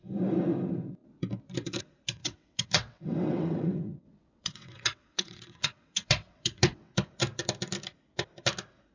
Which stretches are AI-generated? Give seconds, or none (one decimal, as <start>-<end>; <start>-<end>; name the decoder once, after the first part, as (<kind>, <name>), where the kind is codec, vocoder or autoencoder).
2.2-6.9 (vocoder, WaveNeXt)